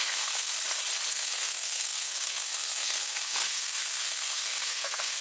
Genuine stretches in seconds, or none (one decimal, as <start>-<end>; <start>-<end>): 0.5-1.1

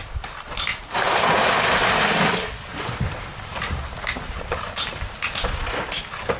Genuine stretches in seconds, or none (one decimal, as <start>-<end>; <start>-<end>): 0.0-3.5; 4.6-6.4

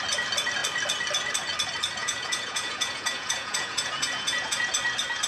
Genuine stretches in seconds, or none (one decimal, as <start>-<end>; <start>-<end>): 0.0-2.0; 4.7-5.3

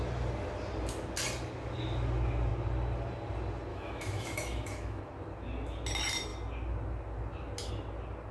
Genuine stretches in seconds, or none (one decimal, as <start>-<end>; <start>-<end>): 0.0-3.7; 5.0-8.3

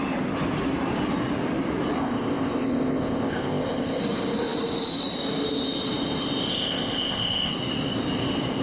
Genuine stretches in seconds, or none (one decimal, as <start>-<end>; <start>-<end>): 0.0-2.0; 4.0-6.5; 7.5-8.6

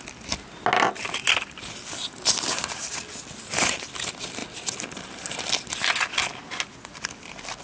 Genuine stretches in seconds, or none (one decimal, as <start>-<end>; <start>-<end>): 0.0-7.6